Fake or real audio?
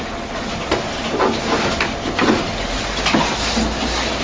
real